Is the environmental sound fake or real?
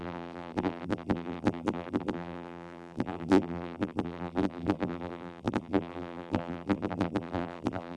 fake